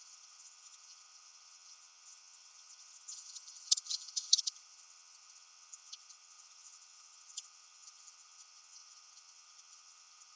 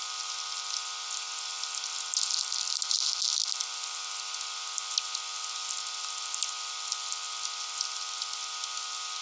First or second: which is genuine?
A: second